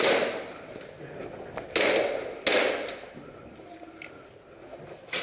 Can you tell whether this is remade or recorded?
recorded